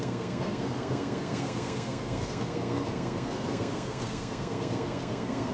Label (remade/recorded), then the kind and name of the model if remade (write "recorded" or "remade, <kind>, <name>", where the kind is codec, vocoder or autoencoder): remade, codec, SNAC